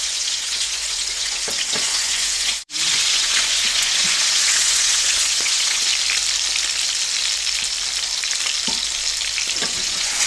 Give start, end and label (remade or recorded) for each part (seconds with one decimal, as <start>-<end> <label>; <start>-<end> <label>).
0.0-5.9 remade; 5.9-9.6 recorded; 9.6-10.3 remade